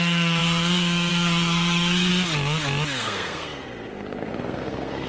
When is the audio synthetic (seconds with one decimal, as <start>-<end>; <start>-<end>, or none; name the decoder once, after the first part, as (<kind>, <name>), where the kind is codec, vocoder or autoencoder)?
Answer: 0.0-2.1 (codec, SNAC); 3.0-5.1